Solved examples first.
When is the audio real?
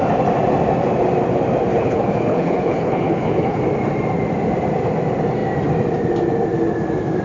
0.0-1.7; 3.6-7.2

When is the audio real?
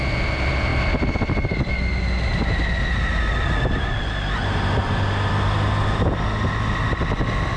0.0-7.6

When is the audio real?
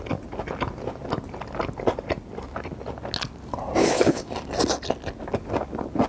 0.0-3.8; 4.3-6.1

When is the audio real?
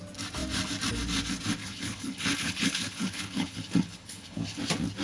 0.0-1.6; 4.6-5.0